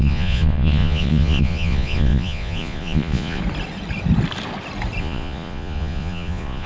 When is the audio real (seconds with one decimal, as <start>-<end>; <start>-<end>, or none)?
3.4-5.0